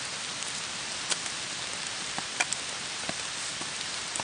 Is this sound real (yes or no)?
yes